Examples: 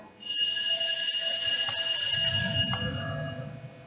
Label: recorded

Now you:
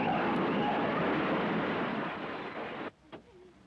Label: recorded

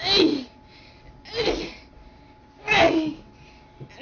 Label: recorded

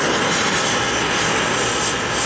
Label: recorded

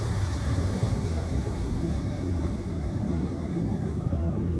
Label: remade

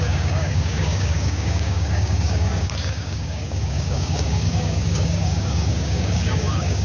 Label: remade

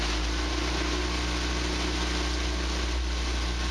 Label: recorded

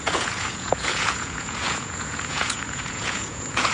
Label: remade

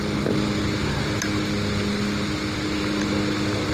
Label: recorded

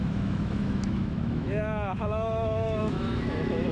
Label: remade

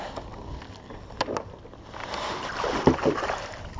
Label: recorded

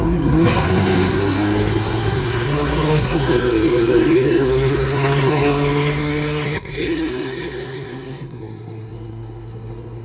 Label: remade